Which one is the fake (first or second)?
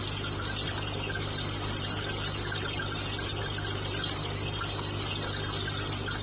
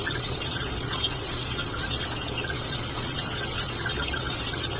second